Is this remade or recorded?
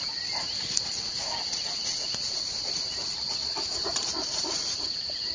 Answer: remade